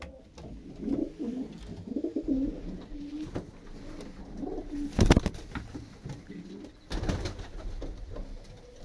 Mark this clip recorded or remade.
recorded